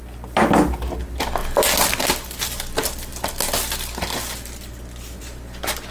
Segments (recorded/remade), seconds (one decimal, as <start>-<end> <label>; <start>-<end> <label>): 0.0-5.9 recorded